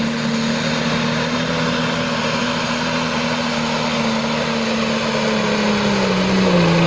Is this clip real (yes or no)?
yes